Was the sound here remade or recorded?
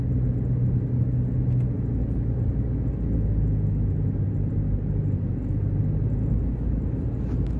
recorded